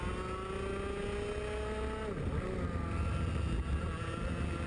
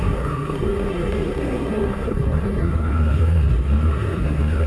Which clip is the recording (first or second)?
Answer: first